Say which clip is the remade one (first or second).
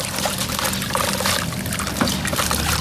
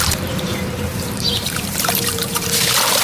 second